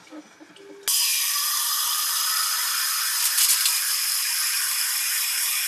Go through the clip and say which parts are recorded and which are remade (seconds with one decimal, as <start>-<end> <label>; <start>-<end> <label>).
0.0-5.7 recorded